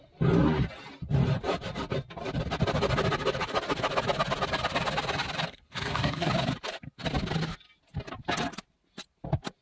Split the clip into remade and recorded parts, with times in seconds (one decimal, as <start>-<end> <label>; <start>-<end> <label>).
0.0-5.5 recorded; 5.5-6.3 remade; 6.3-9.6 recorded

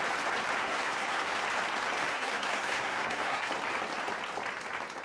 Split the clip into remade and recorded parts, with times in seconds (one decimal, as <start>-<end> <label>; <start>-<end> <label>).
0.0-0.6 recorded; 0.6-1.3 remade; 1.3-2.1 recorded; 2.1-3.5 remade; 3.5-5.0 recorded